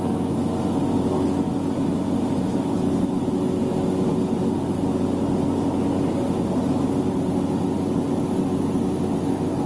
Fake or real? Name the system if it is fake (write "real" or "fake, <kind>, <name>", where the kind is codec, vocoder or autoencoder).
real